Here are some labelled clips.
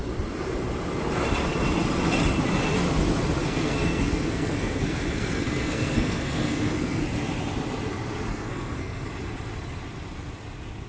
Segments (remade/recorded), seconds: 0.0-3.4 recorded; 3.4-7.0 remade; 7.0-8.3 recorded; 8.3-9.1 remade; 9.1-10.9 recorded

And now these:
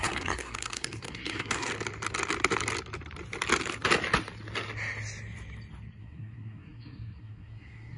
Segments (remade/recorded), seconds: 0.0-1.7 remade; 1.7-6.0 recorded; 6.0-8.0 remade